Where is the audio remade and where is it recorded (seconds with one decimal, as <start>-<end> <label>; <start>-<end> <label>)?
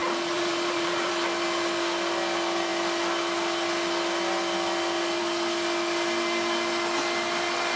0.0-1.1 remade; 1.1-7.8 recorded